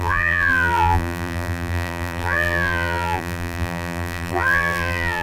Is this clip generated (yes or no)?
yes